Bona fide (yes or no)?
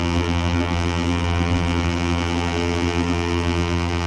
no